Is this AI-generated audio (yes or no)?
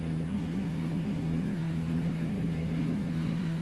yes